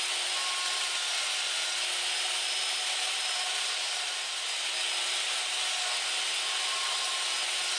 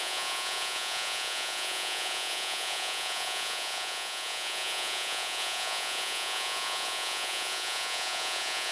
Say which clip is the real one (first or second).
first